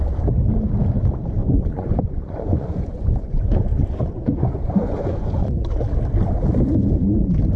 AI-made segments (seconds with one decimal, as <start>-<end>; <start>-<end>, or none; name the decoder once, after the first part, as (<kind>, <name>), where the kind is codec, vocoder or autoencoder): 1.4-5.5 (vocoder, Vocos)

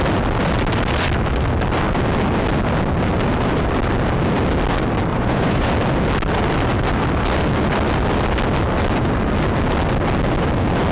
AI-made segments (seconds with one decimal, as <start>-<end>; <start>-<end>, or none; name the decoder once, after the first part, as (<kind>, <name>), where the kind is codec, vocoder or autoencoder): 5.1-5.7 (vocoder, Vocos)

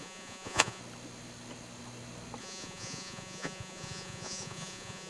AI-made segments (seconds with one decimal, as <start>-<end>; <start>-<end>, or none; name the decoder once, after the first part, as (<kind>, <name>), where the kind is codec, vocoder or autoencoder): 0.0-0.8 (vocoder, Vocos); 2.4-5.1

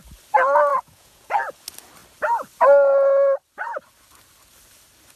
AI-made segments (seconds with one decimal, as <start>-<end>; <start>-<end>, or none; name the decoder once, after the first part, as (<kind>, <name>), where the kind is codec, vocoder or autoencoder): 0.7-1.3 (vocoder, Vocos)

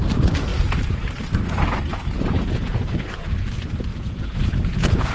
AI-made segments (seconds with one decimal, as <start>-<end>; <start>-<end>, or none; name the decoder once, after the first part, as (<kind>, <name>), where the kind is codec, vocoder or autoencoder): 1.9-2.8 (vocoder, Vocos); 3.9-5.1